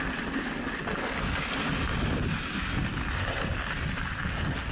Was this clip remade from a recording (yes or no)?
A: no